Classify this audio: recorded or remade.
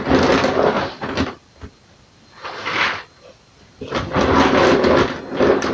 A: recorded